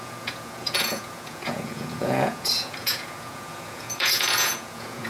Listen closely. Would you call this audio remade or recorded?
remade